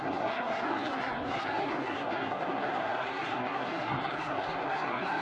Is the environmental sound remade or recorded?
remade